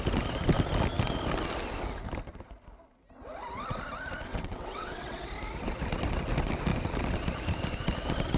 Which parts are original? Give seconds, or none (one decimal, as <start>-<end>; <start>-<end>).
0.0-4.3; 5.2-8.4